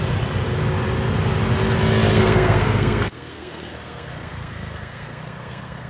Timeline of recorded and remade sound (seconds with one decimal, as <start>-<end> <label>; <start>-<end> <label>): 0.0-2.1 recorded; 2.1-5.9 remade

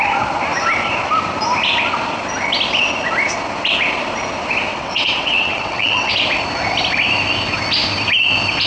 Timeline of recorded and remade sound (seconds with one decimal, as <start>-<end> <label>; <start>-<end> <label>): 0.0-4.7 recorded; 4.7-6.1 remade; 6.1-8.7 recorded

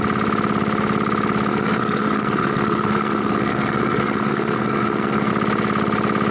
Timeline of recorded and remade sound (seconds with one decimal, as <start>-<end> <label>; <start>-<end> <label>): 0.0-1.5 recorded; 1.5-5.3 remade; 5.3-6.3 recorded

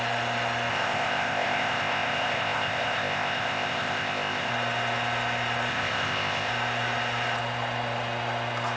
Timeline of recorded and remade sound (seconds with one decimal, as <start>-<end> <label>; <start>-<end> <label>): 0.0-0.7 recorded; 0.7-4.5 remade; 4.5-5.7 recorded; 5.7-6.5 remade; 6.5-8.8 recorded